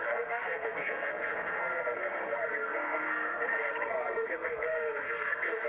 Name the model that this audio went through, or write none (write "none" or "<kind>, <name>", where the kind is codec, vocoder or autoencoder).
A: codec, SNAC